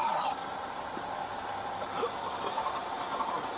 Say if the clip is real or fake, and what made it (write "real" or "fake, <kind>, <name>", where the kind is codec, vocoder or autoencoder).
real